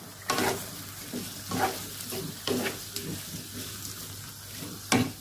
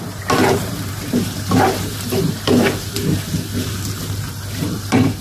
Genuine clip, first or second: first